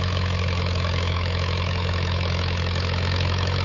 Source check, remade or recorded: remade